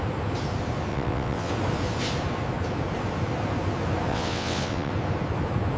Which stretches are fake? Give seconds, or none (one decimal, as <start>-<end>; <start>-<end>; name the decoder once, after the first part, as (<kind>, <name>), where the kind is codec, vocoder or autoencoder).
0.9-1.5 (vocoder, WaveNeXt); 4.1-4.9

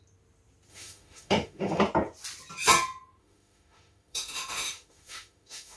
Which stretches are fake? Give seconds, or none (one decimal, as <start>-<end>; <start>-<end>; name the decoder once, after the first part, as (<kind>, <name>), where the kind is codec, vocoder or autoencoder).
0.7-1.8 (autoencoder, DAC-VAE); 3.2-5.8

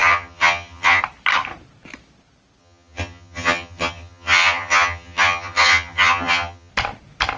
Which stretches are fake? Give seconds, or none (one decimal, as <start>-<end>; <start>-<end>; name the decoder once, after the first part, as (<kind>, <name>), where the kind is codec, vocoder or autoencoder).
0.0-1.0 (vocoder, HiFi-GAN); 2.6-6.7

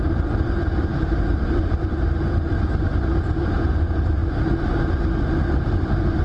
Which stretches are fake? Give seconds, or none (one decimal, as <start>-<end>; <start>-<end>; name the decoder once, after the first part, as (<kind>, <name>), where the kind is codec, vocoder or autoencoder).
0.0-4.2 (vocoder, BigVGAN v2); 5.4-6.2